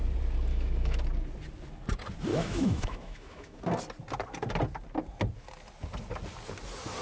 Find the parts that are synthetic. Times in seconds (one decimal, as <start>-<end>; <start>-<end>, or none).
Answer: 0.5-1.0; 2.3-3.6